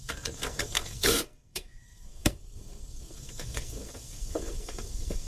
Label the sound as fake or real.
fake